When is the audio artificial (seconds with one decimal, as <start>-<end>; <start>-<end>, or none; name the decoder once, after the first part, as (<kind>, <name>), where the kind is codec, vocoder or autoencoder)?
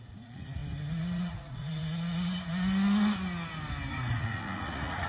0.0-0.6 (vocoder, Vocos); 1.2-1.8; 3.9-5.1